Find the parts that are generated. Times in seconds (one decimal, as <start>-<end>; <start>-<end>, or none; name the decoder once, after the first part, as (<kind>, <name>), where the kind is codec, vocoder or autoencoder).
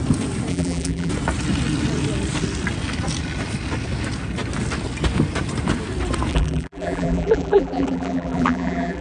0.5-1.1 (vocoder, BigVGAN v2); 6.3-9.0